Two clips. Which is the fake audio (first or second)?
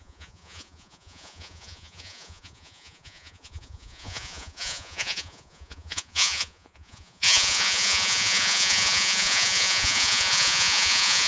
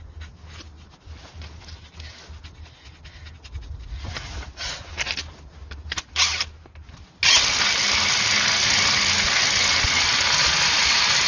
first